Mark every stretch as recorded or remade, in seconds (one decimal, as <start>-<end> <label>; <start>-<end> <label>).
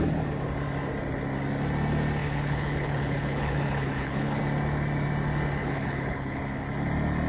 0.0-2.2 recorded; 2.2-4.4 remade; 4.4-5.6 recorded; 5.6-6.4 remade; 6.4-7.3 recorded